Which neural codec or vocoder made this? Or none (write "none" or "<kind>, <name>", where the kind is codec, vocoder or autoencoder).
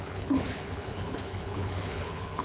codec, HILCodec